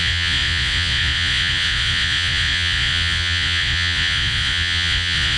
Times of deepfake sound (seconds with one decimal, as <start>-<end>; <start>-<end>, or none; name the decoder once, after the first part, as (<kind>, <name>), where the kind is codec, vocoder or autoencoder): 0.0-5.4 (vocoder, Vocos)